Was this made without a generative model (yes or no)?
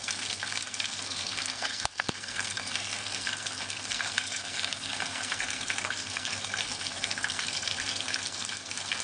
no